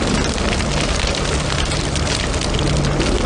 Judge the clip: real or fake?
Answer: real